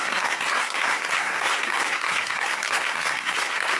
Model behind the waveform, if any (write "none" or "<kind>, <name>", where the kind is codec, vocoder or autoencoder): codec, SNAC